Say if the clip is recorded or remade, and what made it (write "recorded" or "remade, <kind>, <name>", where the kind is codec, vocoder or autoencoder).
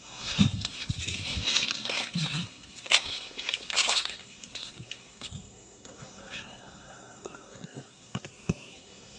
remade, codec, SNAC